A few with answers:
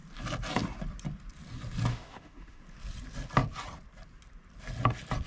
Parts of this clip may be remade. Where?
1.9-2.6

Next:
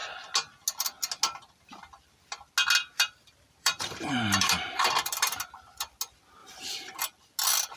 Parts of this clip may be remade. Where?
2.8-5.1; 6.4-7.0

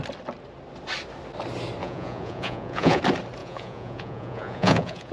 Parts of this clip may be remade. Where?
1.8-3.0; 3.4-5.1